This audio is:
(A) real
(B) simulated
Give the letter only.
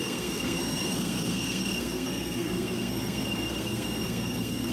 B